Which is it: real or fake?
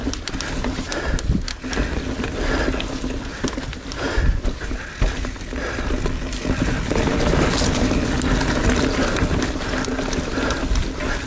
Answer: real